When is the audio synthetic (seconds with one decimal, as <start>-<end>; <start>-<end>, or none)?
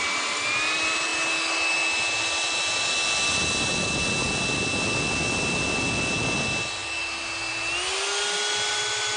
none